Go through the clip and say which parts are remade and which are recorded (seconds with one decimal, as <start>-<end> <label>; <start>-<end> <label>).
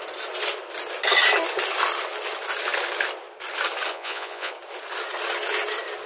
0.0-3.9 recorded; 3.9-4.5 remade; 4.5-6.1 recorded